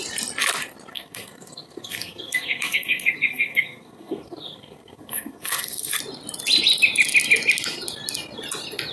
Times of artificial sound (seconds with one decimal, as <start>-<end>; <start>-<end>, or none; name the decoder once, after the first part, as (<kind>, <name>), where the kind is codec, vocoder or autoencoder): 0.9-6.0 (codec, SNAC)